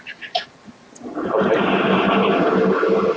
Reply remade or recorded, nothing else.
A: recorded